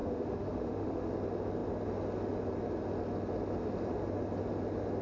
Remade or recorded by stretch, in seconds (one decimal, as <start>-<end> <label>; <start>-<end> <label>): 0.0-1.1 remade; 1.1-5.0 recorded